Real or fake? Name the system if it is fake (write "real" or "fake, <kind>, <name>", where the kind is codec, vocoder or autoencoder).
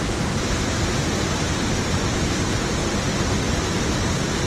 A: real